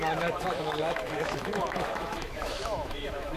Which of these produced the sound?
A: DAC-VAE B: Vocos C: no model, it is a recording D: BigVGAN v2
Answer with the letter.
A